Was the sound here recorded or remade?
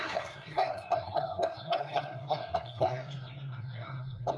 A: remade